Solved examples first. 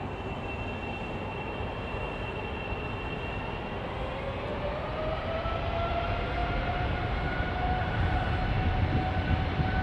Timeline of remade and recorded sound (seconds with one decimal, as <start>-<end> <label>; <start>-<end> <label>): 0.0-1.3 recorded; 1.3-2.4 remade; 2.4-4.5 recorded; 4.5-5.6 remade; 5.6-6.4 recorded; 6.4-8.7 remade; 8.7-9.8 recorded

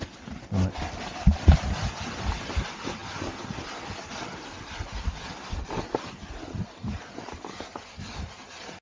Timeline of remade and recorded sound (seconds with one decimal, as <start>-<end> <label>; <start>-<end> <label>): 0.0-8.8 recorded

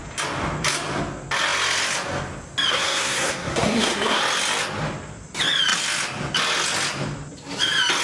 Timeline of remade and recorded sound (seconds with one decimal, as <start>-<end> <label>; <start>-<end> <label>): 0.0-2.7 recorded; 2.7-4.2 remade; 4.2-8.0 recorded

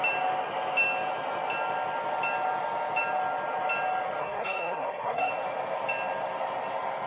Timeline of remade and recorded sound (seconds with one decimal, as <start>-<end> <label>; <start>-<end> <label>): 0.0-4.2 recorded; 4.2-5.3 remade; 5.3-7.1 recorded

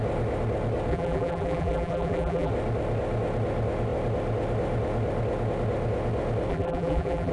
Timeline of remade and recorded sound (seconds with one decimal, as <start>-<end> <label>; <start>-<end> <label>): 0.0-0.9 recorded; 0.9-2.5 remade; 2.5-6.5 recorded; 6.5-7.3 remade

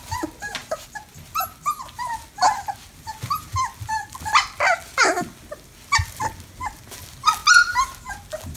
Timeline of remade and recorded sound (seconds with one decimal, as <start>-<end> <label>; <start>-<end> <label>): 0.0-8.6 recorded

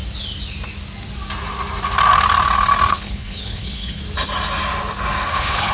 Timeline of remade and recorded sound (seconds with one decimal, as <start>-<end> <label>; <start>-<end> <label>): 0.0-2.9 recorded; 2.9-4.0 remade; 4.0-5.3 recorded; 5.3-5.7 remade

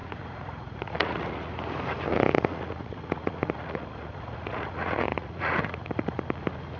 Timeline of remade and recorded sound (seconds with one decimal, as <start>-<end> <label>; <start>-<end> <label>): 0.0-1.5 remade; 1.5-2.1 recorded; 2.1-6.2 remade; 6.2-6.8 recorded